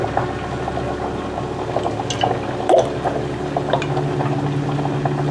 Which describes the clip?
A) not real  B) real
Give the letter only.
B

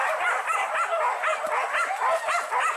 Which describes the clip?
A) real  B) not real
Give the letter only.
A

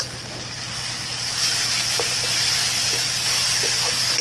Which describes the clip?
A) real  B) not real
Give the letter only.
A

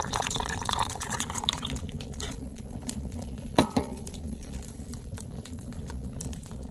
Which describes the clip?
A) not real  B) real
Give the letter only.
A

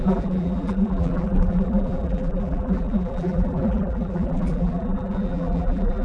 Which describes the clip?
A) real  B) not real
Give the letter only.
B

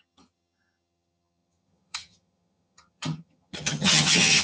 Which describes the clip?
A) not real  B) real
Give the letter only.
A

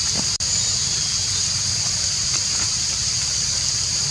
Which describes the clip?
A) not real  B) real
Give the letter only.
A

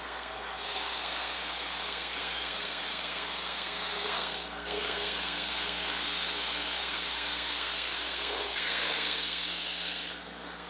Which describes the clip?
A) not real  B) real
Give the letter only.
A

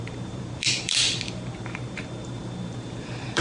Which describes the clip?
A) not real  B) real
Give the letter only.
A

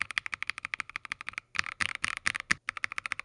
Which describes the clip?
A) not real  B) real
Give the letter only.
B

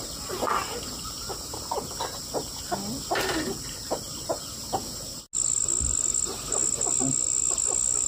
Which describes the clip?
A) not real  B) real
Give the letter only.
B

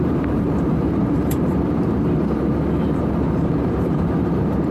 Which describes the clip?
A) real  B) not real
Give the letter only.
B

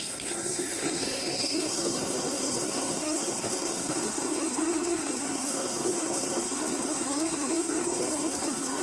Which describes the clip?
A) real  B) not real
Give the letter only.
B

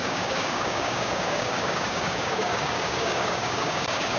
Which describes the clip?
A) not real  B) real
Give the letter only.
A